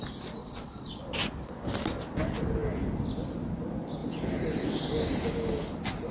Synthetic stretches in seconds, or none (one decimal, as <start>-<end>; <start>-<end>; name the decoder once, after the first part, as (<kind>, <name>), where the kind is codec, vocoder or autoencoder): 0.4-1.0 (vocoder, Vocos)